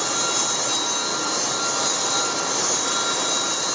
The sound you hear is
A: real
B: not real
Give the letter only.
A